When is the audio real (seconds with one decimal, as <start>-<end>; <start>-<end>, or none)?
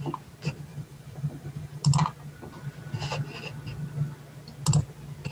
0.0-0.7; 1.8-5.3